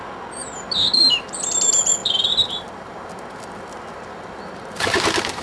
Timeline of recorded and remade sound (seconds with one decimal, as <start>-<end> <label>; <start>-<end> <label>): 0.0-0.4 recorded; 0.4-1.2 remade; 1.2-2.0 recorded; 2.0-4.4 remade; 4.4-5.4 recorded